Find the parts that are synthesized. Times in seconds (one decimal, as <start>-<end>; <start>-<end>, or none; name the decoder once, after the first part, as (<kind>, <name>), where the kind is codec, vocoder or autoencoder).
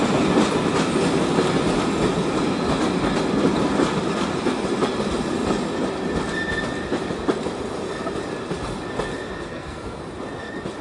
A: 9.4-10.0 (codec, SNAC)